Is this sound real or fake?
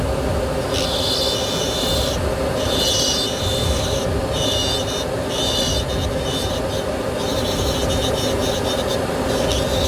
real